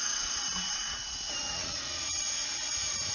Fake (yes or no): yes